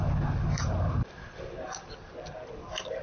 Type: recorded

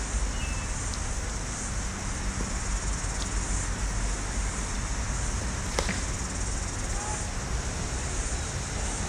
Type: recorded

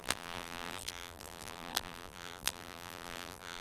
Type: remade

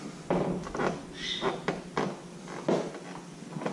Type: recorded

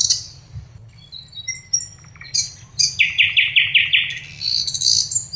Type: recorded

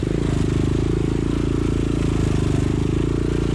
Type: recorded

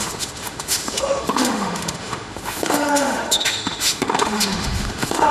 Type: remade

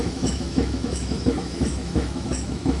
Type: remade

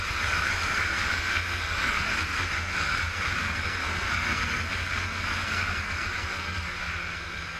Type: remade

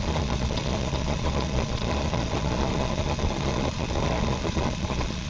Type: remade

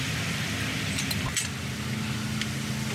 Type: recorded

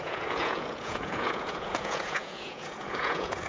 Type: remade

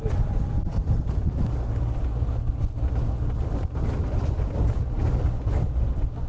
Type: recorded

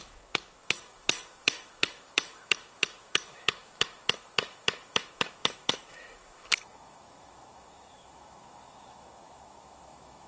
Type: remade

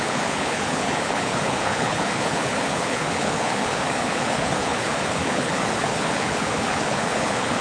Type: remade